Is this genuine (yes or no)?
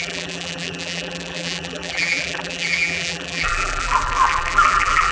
no